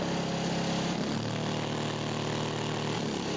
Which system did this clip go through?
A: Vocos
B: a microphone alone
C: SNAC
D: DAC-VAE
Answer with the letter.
B